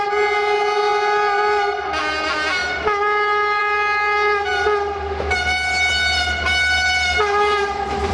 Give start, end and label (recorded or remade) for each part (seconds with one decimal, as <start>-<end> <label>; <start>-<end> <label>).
0.0-8.1 recorded